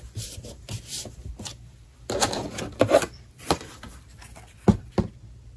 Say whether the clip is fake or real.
fake